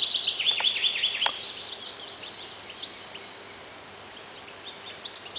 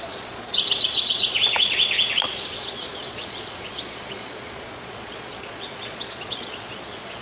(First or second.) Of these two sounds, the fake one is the second